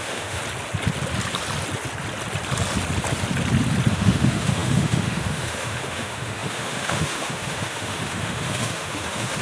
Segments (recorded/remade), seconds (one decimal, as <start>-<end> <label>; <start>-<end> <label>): 0.0-0.4 remade; 0.4-3.9 recorded; 3.9-9.4 remade